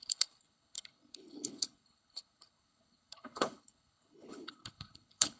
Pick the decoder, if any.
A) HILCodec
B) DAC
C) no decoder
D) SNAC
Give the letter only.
A